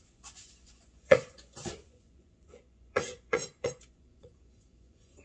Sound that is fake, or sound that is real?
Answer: fake